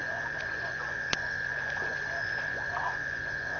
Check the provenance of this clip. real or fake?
fake